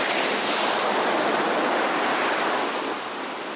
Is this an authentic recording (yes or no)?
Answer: yes